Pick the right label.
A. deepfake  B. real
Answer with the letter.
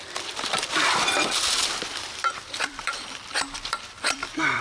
A